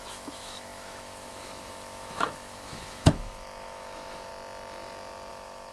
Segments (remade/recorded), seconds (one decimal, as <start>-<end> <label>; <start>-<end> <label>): 0.0-4.3 remade; 4.3-5.3 recorded; 5.3-5.7 remade